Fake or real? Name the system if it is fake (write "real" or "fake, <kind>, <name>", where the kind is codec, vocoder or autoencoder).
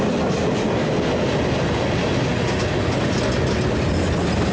real